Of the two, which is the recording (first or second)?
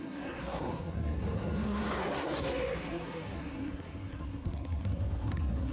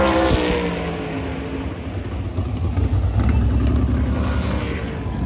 second